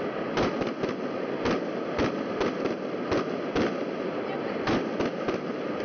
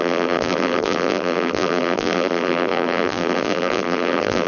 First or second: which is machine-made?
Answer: second